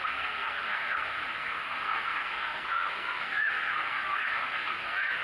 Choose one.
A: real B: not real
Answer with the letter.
B